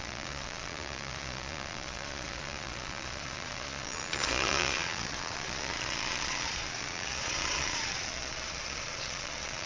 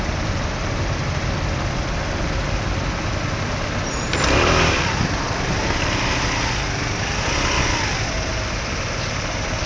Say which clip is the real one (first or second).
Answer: second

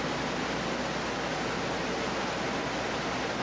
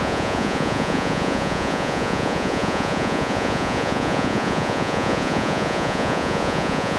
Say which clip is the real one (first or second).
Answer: first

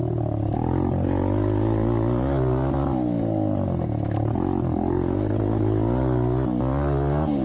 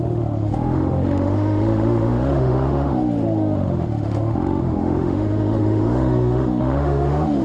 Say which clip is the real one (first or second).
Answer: first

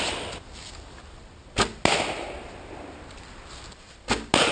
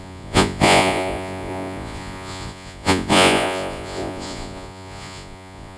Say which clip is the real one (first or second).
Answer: first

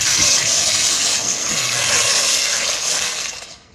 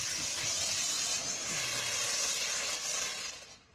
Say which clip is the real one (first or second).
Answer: second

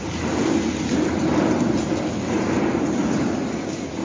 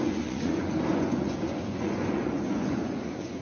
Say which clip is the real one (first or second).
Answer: first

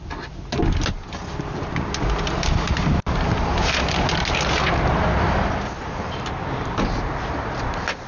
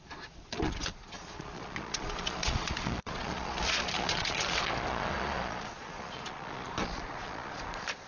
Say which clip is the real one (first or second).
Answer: first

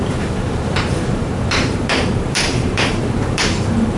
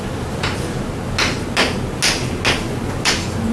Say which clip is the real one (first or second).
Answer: second